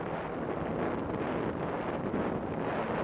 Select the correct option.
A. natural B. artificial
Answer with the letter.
A